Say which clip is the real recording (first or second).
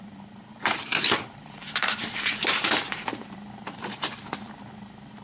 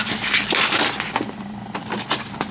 second